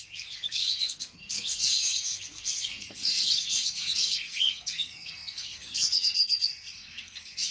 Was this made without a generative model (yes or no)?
no